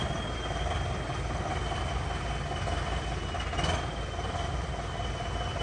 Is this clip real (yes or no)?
yes